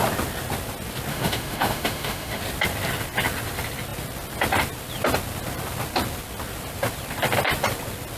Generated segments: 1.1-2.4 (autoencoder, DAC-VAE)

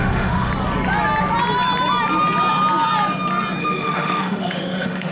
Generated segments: 0.0-0.5 (autoencoder, DAC-VAE); 3.6-5.1